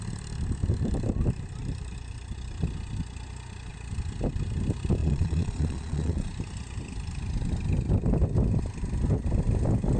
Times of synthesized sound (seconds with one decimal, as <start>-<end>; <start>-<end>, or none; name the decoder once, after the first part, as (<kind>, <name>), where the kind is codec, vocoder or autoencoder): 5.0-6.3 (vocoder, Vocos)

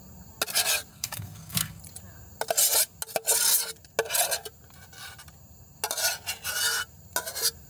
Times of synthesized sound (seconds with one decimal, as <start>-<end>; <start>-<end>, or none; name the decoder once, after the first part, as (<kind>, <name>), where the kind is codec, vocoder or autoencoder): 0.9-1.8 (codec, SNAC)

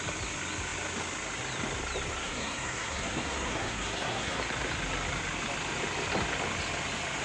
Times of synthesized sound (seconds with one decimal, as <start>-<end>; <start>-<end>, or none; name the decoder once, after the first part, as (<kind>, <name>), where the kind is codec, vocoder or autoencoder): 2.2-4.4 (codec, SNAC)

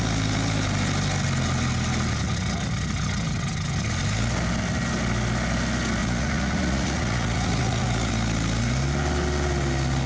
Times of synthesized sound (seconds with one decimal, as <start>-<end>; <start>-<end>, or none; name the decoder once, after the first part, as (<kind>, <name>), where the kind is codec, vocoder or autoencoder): 6.0-8.1 (vocoder, Vocos)

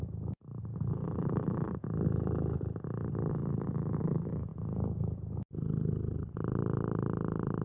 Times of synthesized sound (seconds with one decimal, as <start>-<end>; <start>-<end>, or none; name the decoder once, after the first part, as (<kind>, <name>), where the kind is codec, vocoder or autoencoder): 0.7-1.7 (vocoder, BigVGAN v2)

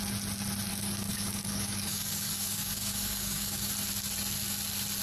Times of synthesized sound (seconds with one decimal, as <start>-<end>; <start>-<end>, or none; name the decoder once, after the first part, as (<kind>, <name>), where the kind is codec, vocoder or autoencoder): 0.7-3.7 (codec, DAC)

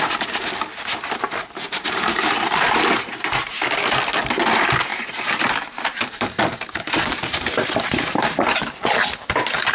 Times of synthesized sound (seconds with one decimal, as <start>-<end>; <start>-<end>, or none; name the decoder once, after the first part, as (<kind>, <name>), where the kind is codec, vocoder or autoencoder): 0.9-4.0 (vocoder, BigVGAN v2); 4.9-8.7